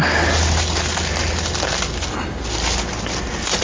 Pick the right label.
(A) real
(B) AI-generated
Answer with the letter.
A